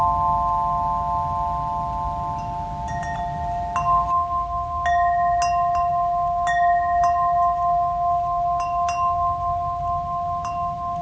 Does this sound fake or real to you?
real